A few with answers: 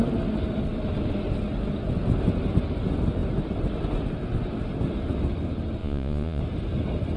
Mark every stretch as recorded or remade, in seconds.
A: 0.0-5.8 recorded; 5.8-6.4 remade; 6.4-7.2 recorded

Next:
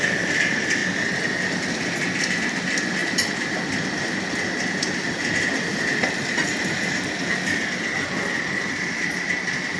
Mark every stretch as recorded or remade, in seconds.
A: 0.0-9.8 recorded

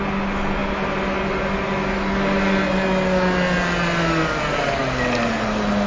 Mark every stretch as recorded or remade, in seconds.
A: 0.0-5.9 recorded

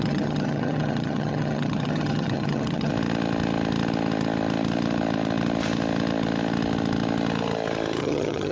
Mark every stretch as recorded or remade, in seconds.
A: 0.0-2.9 remade; 2.9-8.0 recorded; 8.0-8.5 remade

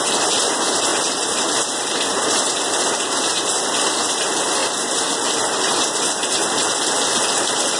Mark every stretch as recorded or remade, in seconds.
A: 0.0-7.8 recorded

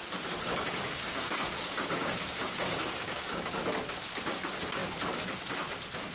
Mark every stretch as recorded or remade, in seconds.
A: 0.0-0.5 recorded; 0.5-3.5 remade; 3.5-6.1 recorded